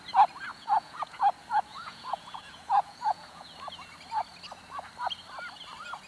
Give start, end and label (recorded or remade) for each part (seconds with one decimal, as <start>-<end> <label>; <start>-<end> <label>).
0.0-0.5 recorded; 0.5-1.2 remade; 1.2-1.7 recorded; 1.7-3.5 remade; 3.5-6.1 recorded